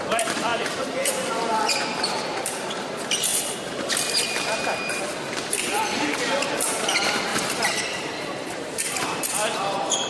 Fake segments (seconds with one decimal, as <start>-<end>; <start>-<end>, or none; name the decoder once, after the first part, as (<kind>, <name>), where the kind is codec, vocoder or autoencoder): 0.5-1.8 (vocoder, BigVGAN v2); 3.3-5.8; 7.3-9.2